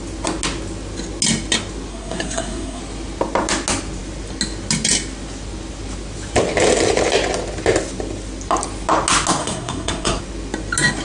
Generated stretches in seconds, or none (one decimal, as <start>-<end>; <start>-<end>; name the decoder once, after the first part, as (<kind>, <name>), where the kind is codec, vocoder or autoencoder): 1.9-2.8 (codec, SNAC); 9.4-10.2